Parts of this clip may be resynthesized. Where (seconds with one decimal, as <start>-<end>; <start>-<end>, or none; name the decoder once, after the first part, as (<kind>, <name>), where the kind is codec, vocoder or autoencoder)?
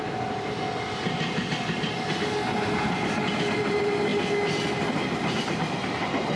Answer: none